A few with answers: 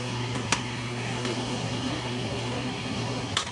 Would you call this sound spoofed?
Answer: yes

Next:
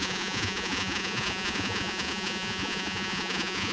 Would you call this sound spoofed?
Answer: yes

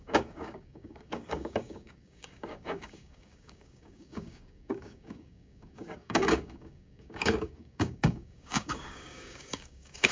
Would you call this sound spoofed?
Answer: yes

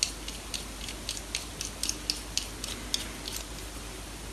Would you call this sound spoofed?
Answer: no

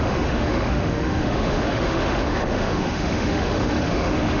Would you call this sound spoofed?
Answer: yes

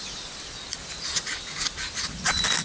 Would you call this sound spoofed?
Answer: no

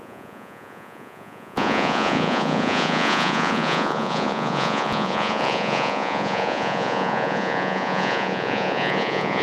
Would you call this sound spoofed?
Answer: yes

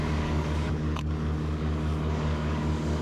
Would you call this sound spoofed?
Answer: yes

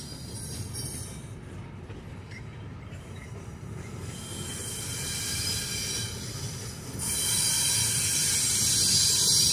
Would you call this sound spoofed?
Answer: no